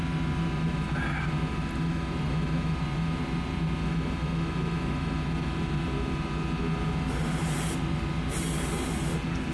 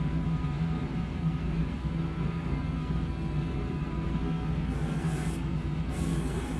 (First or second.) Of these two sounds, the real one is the first